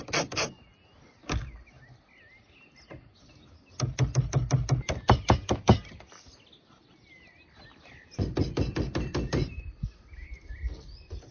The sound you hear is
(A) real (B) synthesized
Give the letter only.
A